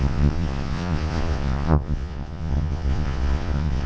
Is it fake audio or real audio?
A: fake